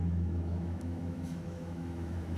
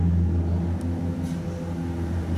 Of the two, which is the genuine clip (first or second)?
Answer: second